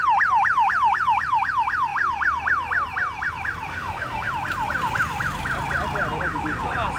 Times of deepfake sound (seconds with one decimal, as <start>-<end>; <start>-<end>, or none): 3.7-4.3